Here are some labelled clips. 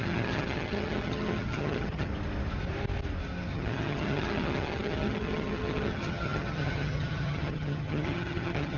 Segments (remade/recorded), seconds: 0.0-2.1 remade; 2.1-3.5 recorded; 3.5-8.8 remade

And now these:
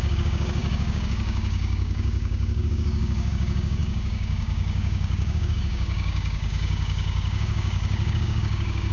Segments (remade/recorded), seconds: 0.0-8.9 remade

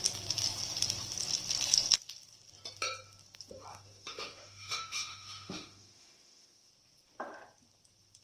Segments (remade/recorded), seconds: 0.0-3.7 recorded; 3.7-6.7 remade; 6.7-8.2 recorded

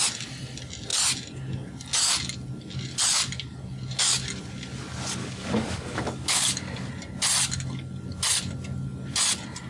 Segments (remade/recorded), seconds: 0.0-5.2 recorded; 5.2-6.9 remade; 6.9-9.7 recorded

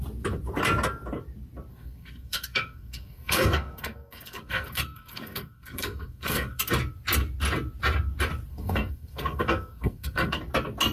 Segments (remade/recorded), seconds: 0.0-1.7 recorded; 1.7-6.6 remade; 6.6-8.5 recorded; 8.5-10.4 remade; 10.4-10.9 recorded

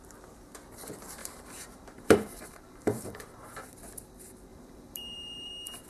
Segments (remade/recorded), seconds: 0.0-1.2 recorded; 1.2-3.7 remade; 3.7-4.5 recorded; 4.5-5.5 remade; 5.5-5.9 recorded